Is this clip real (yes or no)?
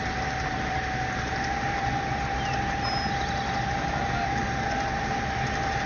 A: yes